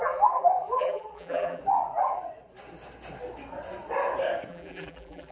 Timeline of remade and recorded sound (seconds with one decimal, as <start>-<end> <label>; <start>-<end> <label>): 0.0-1.6 remade; 1.6-4.5 recorded; 4.5-5.3 remade